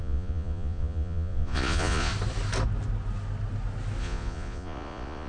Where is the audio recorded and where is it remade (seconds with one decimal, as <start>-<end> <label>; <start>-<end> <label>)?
0.0-2.1 remade; 2.1-4.0 recorded; 4.0-5.3 remade